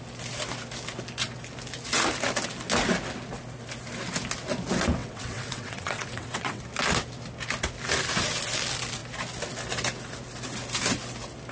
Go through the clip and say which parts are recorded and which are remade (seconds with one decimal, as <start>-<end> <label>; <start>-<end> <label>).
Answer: 0.0-5.0 recorded; 5.0-6.6 remade; 6.6-11.5 recorded